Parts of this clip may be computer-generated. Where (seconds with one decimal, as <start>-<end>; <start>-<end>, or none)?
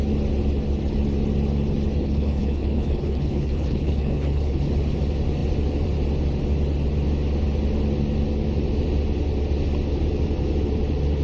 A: 2.0-4.6